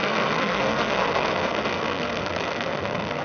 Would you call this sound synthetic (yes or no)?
yes